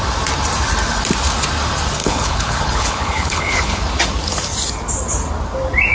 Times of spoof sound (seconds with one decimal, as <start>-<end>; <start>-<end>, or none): 2.0-3.8